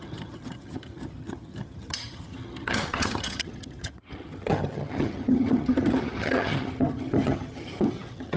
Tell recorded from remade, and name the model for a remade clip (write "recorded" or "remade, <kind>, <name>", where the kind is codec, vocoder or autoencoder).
remade, vocoder, HiFi-GAN